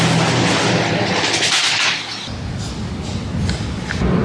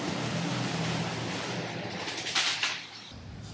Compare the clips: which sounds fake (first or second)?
second